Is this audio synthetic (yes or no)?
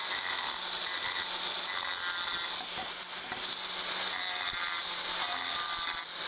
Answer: no